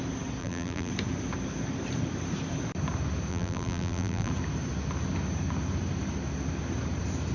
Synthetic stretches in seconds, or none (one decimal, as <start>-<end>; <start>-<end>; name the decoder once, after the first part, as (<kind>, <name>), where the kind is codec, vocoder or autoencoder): 0.4-0.9 (vocoder, BigVGAN v2); 3.3-4.3